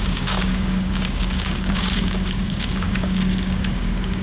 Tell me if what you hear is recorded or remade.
remade